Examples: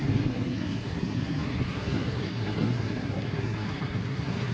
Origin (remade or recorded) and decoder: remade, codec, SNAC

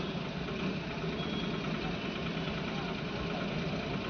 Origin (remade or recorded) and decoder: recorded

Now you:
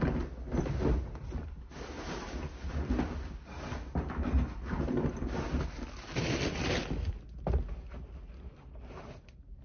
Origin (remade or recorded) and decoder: recorded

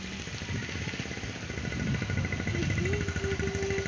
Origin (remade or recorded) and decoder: recorded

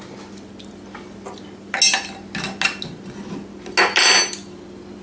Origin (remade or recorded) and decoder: recorded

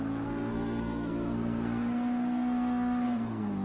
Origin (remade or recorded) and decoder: remade, codec, SNAC